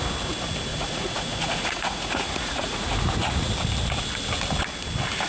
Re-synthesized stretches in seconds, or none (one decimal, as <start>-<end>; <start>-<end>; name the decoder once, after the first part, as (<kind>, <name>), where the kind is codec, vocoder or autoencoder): 0.7-3.5 (vocoder, Vocos)